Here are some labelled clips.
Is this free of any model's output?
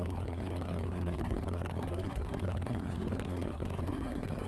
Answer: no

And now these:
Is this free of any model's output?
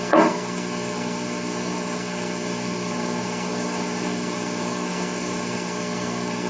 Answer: no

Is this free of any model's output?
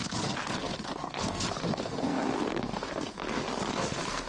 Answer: no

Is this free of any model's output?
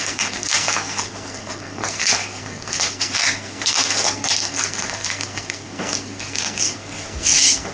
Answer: no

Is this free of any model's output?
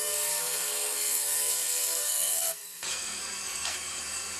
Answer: no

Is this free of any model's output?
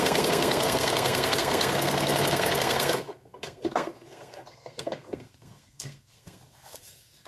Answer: no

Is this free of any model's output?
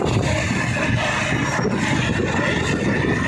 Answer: yes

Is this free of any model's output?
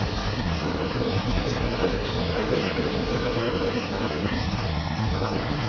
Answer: no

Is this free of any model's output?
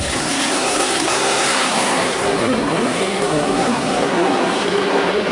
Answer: no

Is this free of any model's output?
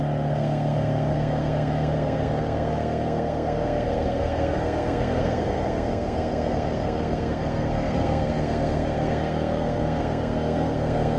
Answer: no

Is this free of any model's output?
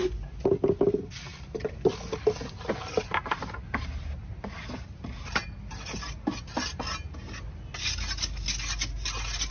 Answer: yes